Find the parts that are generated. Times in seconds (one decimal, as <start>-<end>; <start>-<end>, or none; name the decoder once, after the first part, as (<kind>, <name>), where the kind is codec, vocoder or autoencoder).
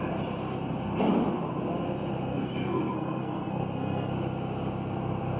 2.3-4.1 (codec, SNAC)